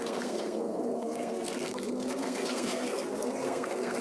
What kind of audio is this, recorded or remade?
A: remade